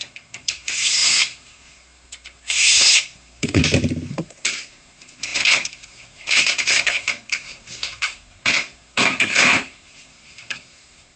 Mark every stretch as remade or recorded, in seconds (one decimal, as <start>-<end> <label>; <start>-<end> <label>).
0.0-3.6 remade; 3.6-4.1 recorded; 4.1-11.2 remade